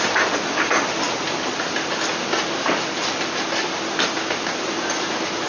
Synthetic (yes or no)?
no